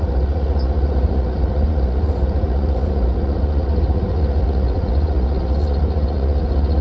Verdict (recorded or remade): remade